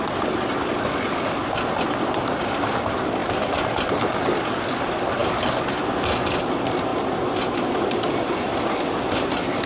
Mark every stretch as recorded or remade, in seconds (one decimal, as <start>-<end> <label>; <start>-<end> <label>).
0.0-9.7 recorded